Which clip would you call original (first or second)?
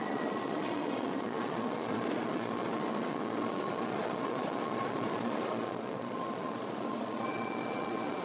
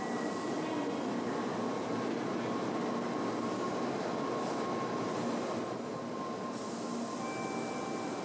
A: second